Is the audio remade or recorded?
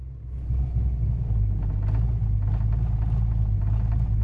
recorded